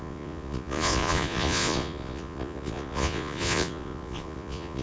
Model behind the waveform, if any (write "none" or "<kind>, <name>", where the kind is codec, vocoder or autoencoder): vocoder, Vocos